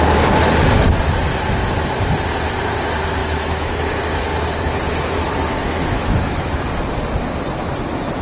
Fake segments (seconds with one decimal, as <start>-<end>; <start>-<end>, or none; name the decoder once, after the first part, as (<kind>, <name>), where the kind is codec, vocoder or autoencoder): 3.2-3.7 (autoencoder, DAC-VAE); 4.9-6.5

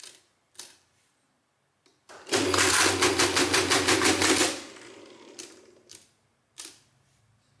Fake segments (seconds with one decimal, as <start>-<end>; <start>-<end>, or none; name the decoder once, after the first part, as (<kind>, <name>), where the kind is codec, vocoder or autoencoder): none

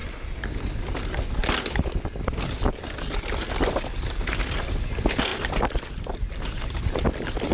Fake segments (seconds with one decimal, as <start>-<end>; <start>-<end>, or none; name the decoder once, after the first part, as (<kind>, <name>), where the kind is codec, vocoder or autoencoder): 0.0-0.9 (vocoder, BigVGAN v2); 5.3-5.9

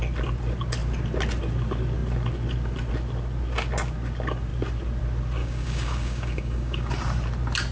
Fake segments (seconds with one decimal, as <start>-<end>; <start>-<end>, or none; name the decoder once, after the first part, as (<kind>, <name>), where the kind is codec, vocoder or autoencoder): 5.4-6.9 (codec, DAC)

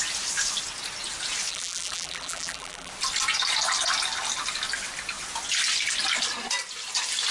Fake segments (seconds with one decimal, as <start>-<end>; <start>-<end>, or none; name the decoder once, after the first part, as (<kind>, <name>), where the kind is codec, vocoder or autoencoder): 1.5-2.9 (vocoder, BigVGAN v2)

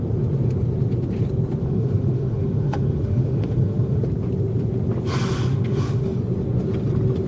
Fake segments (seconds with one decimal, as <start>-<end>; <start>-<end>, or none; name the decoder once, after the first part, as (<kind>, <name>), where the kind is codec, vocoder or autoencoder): 1.6-4.0 (autoencoder, DAC-VAE); 5.5-6.2

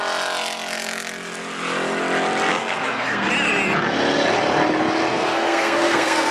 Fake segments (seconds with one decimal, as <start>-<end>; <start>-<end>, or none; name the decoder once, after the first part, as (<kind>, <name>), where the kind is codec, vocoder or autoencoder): 2.5-3.3 (codec, SNAC); 5.1-6.3

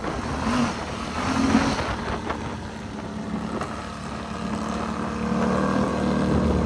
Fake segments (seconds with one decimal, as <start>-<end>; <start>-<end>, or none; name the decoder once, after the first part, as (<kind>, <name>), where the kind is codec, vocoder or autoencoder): none